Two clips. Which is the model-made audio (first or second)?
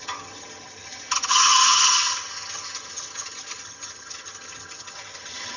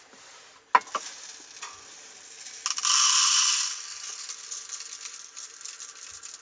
first